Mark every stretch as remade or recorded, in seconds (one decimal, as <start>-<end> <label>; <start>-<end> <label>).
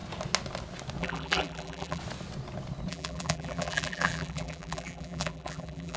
0.0-1.0 recorded; 1.0-2.0 remade; 2.0-2.9 recorded; 2.9-6.0 remade